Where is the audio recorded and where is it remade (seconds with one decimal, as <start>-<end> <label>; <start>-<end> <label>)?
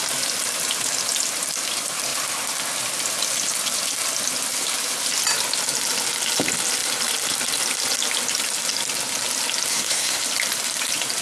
0.0-9.7 recorded; 9.7-10.2 remade; 10.2-11.2 recorded